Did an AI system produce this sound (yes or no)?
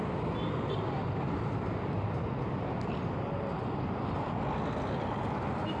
no